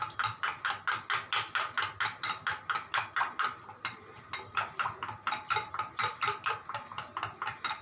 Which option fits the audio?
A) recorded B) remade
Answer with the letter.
A